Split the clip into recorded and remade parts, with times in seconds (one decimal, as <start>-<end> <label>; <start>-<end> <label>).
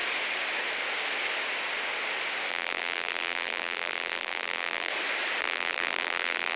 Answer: 0.0-2.5 recorded; 2.5-4.9 remade; 4.9-5.4 recorded; 5.4-6.6 remade